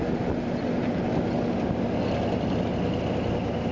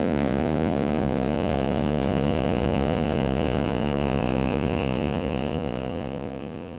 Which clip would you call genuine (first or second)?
first